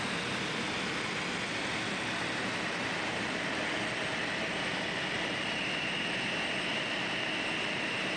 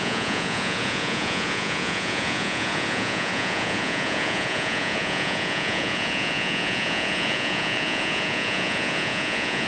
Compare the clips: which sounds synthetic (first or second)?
second